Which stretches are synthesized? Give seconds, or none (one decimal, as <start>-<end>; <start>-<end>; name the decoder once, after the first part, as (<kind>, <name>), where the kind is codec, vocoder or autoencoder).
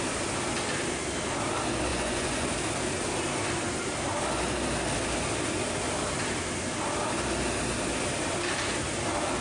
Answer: 1.9-2.5 (vocoder, Vocos)